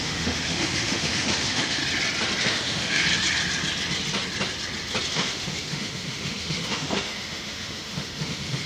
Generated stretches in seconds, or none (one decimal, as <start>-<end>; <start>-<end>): 0.0-1.8; 2.4-3.0; 5.1-8.7